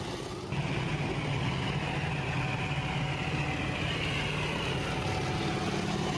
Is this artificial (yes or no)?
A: no